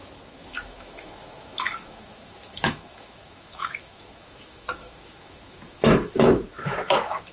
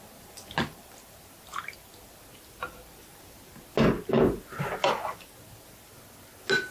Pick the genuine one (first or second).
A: second